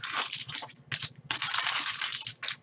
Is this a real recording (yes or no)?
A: yes